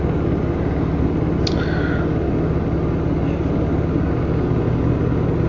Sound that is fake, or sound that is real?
real